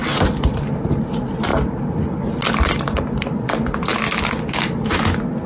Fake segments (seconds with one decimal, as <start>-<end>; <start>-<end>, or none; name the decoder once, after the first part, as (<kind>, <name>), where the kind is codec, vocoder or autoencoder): none

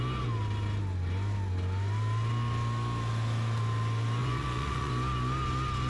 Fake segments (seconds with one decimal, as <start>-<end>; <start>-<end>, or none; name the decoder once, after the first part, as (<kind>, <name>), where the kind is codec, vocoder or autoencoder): 4.2-4.9 (vocoder, Vocos)